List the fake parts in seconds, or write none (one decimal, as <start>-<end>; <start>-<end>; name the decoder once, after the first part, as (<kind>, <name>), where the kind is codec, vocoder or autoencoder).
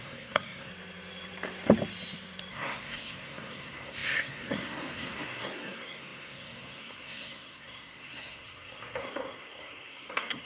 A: 0.0-0.7 (codec, SNAC); 2.5-10.5